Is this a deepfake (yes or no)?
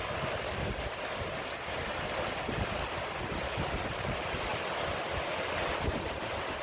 no